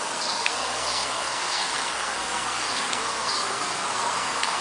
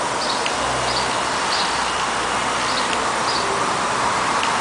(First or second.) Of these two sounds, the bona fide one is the second